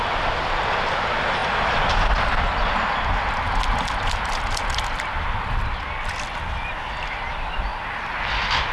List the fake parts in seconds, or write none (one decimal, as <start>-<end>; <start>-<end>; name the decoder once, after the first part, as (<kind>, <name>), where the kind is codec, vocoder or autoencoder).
none